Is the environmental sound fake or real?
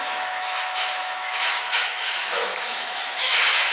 fake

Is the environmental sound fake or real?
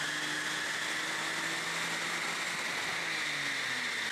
real